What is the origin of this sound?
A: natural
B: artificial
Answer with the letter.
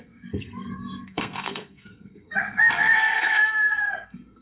B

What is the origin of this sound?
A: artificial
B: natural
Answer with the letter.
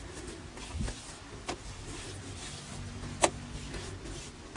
B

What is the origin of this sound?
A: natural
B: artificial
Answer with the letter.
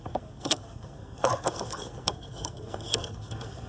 B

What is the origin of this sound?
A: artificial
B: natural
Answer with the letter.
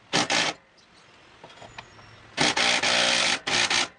B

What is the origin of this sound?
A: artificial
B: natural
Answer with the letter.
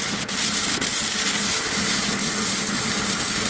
B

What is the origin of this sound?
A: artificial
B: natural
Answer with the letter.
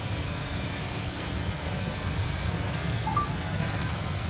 A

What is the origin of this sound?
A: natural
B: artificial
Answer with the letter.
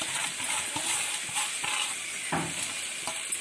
A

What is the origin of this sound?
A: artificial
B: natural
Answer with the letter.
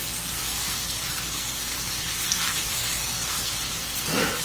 A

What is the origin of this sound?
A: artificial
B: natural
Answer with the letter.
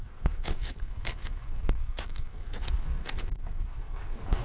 A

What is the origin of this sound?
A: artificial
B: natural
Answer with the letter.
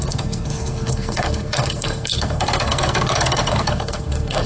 A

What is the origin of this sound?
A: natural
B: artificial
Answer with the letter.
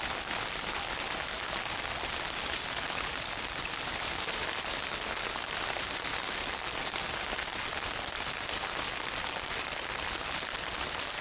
A